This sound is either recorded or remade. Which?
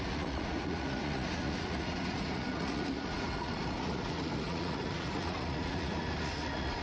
remade